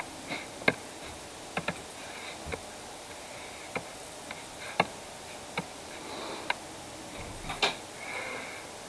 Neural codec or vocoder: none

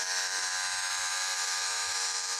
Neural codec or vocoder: autoencoder, DAC-VAE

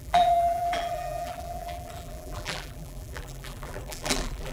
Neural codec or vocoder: vocoder, BigVGAN v2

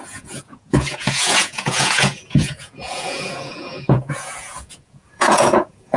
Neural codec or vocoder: vocoder, Vocos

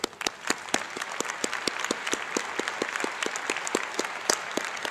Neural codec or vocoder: vocoder, BigVGAN v2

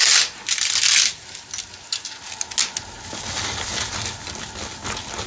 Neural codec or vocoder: none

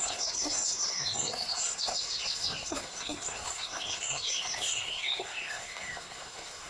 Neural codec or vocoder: codec, SNAC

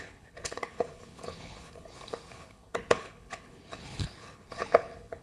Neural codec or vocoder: codec, HILCodec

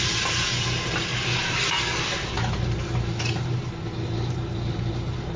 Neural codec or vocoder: none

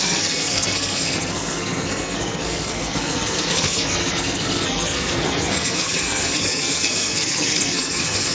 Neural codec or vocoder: codec, SNAC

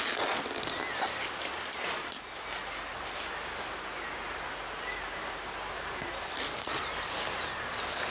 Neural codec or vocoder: none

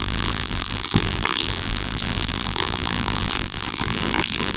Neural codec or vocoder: vocoder, BigVGAN v2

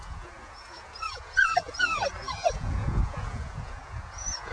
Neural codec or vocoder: vocoder, Vocos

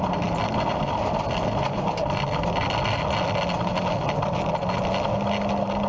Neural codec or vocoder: none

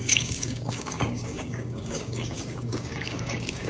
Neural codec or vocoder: codec, DAC